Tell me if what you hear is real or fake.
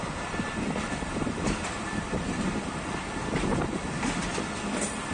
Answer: real